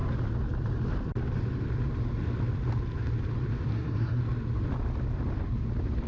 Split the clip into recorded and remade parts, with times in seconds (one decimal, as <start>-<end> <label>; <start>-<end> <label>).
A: 0.0-3.7 recorded; 3.7-4.2 remade; 4.2-6.1 recorded

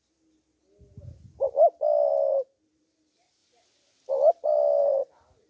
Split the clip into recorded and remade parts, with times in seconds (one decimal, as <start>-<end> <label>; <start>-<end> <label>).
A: 0.0-5.5 recorded

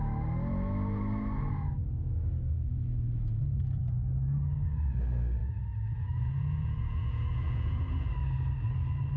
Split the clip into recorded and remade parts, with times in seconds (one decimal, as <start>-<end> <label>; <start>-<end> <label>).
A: 0.0-5.4 recorded; 5.4-8.1 remade; 8.1-9.2 recorded

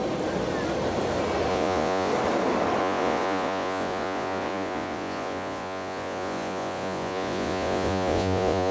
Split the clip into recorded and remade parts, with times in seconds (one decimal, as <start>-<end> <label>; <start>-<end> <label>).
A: 0.0-1.5 recorded; 1.5-2.1 remade; 2.1-2.8 recorded; 2.8-8.7 remade

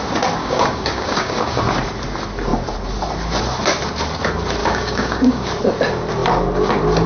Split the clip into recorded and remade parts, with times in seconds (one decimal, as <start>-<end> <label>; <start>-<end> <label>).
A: 0.0-0.4 recorded; 0.4-1.6 remade; 1.6-4.6 recorded; 4.6-5.5 remade; 5.5-7.1 recorded

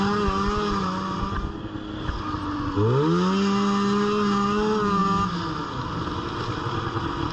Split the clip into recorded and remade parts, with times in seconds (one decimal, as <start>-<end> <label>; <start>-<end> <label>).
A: 0.0-7.3 recorded

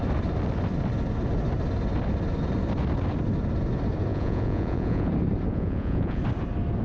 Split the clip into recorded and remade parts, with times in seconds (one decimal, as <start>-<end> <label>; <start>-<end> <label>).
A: 0.0-4.1 recorded; 4.1-5.1 remade; 5.1-5.5 recorded; 5.5-6.2 remade; 6.2-6.8 recorded

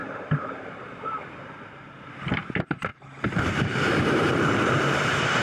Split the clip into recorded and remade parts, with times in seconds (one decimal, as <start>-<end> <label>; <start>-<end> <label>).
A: 0.0-2.9 remade; 2.9-3.5 recorded; 3.5-5.4 remade